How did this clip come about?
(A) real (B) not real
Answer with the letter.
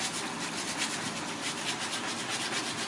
A